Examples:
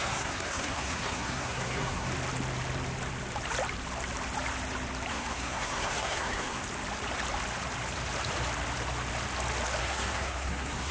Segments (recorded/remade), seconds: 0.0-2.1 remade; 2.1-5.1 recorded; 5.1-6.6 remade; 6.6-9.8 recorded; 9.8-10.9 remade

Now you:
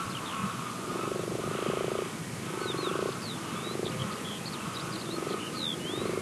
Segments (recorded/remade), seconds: 0.0-0.4 recorded; 0.4-1.4 remade; 1.4-4.0 recorded; 4.0-5.5 remade; 5.5-6.2 recorded

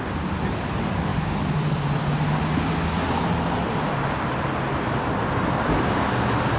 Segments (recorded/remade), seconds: 0.0-6.6 recorded

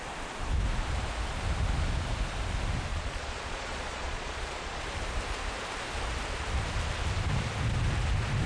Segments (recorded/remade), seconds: 0.0-2.9 recorded; 2.9-4.8 remade; 4.8-8.5 recorded

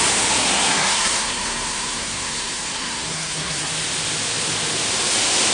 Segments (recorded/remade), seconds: 0.0-0.4 recorded; 0.4-3.7 remade; 3.7-5.5 recorded